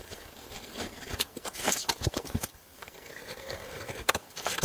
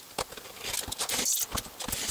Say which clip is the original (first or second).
second